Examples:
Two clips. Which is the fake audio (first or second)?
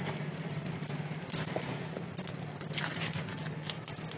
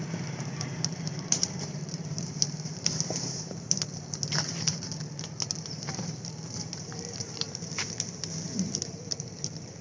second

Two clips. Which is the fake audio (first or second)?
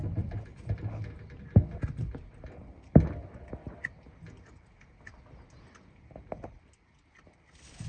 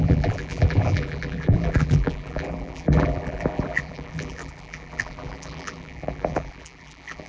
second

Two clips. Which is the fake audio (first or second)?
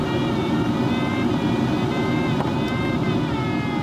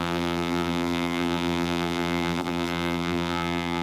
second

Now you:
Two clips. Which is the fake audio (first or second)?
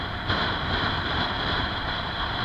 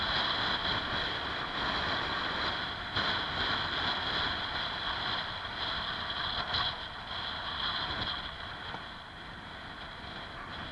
first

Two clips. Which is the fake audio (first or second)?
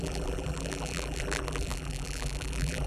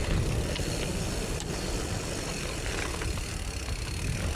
first